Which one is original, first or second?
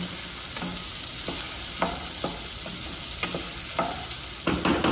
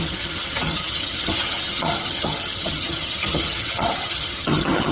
first